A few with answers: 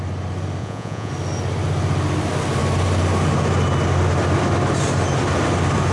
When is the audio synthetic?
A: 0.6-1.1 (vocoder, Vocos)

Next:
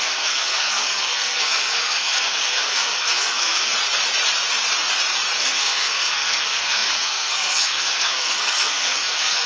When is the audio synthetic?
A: 0.0-3.7 (codec, SNAC); 5.4-9.5

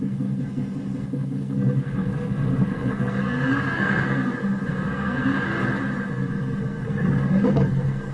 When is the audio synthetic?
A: 0.0-5.5 (codec, SNAC); 6.1-8.1

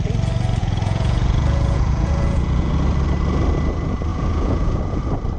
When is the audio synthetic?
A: 0.6-2.7 (vocoder, Vocos); 4.1-5.0

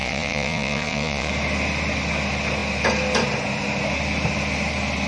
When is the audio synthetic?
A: 0.0-1.3 (vocoder, Vocos)

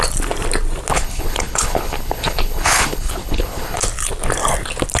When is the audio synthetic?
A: 0.9-3.8 (codec, HILCodec)

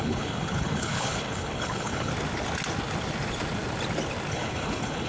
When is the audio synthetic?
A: 0.0-2.1 (codec, HILCodec); 4.3-5.1

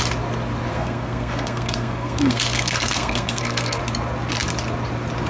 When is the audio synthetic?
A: 0.7-3.8 (codec, SNAC)